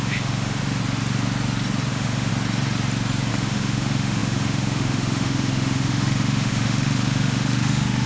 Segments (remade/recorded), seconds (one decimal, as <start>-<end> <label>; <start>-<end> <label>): 0.0-0.6 remade; 0.6-1.9 recorded; 1.9-2.3 remade; 2.3-3.3 recorded; 3.3-8.1 remade